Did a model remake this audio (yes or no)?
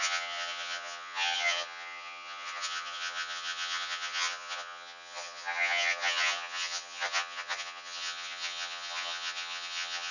yes